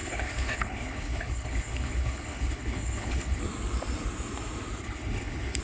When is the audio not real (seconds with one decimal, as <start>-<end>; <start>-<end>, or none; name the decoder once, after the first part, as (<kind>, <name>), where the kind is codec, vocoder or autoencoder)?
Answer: 0.0-3.4 (codec, HILCodec); 4.8-5.6